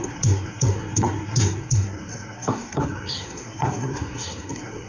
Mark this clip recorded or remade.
remade